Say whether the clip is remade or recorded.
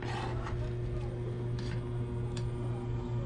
recorded